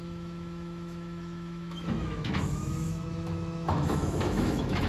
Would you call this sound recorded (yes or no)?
no